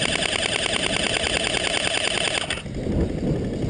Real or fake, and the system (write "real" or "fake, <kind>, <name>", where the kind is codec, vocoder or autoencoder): real